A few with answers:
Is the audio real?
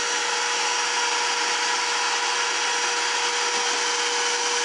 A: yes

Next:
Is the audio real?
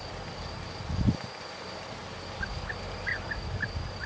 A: yes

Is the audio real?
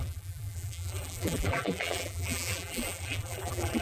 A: no